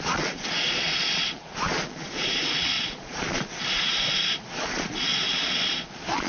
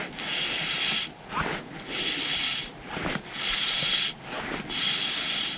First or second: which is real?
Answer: second